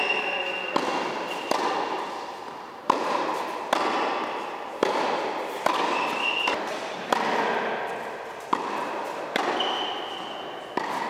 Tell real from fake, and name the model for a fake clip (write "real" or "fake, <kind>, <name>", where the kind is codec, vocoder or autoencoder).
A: real